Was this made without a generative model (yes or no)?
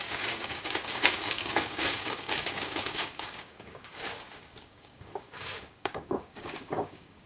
no